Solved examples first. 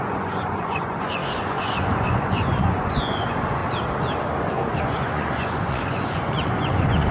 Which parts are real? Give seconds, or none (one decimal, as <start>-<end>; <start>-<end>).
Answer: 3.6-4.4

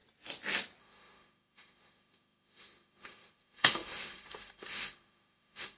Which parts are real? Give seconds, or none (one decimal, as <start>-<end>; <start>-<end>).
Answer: 0.0-0.8

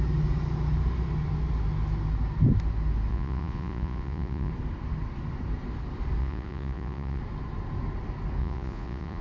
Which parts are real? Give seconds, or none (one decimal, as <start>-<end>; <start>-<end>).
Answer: 0.0-3.1; 4.5-6.2; 7.2-8.4

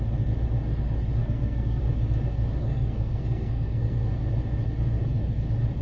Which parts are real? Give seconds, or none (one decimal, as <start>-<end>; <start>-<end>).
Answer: 0.0-1.2; 1.8-2.6; 4.1-5.8

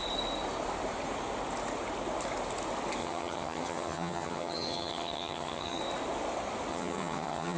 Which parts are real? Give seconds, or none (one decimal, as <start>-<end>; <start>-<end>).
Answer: 0.0-3.0; 5.8-6.7

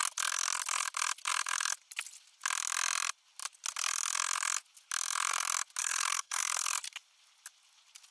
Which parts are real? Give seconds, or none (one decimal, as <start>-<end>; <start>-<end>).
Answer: 0.0-5.8; 6.4-8.1